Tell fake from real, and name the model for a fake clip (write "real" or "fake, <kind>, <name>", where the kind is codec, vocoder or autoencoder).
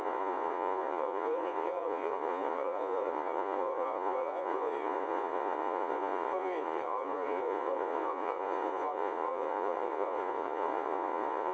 fake, vocoder, Vocos